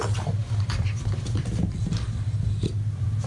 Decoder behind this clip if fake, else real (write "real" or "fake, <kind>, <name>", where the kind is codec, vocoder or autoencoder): fake, vocoder, BigVGAN v2